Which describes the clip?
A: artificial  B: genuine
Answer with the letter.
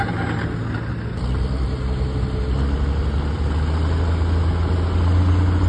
B